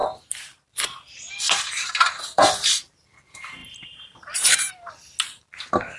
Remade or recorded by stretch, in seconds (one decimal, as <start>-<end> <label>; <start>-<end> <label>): 0.0-0.7 remade; 0.7-3.6 recorded; 3.6-4.7 remade; 4.7-6.0 recorded